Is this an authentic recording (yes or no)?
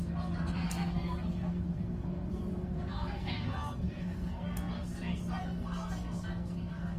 no